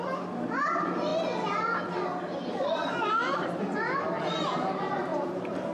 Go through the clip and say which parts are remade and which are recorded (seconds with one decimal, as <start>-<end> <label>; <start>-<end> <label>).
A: 0.0-5.1 recorded; 5.1-5.7 remade